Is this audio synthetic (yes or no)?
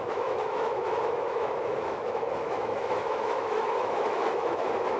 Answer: yes